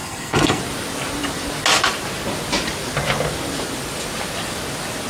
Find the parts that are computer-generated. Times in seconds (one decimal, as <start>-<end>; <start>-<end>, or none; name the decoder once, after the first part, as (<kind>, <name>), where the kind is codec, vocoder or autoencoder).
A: 0.0-0.6 (codec, SNAC)